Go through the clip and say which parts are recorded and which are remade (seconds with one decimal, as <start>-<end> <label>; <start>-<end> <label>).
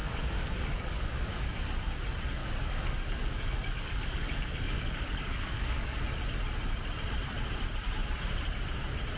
0.0-1.6 remade; 1.6-2.4 recorded; 2.4-6.0 remade; 6.0-9.2 recorded